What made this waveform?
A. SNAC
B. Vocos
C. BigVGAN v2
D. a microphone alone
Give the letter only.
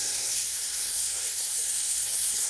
A